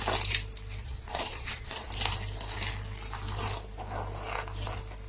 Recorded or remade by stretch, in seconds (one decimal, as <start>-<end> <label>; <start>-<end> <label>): 0.0-0.8 recorded; 0.8-1.9 remade; 1.9-5.1 recorded